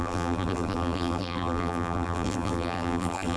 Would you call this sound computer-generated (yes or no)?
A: yes